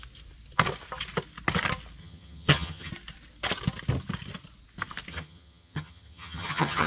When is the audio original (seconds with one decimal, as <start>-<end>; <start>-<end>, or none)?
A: 0.0-2.0; 2.9-5.1